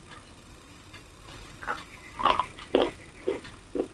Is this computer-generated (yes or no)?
no